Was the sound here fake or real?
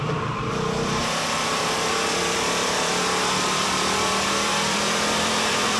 fake